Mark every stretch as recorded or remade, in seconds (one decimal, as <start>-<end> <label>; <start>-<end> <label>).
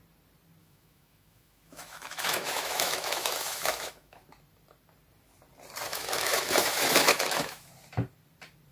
0.0-0.6 recorded; 0.6-4.2 remade; 4.2-5.9 recorded; 5.9-7.7 remade; 7.7-8.7 recorded